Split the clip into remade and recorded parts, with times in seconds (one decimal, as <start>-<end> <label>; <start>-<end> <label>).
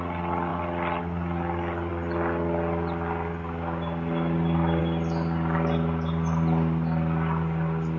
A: 0.0-8.0 recorded